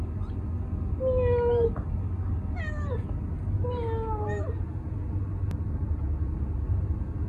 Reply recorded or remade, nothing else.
recorded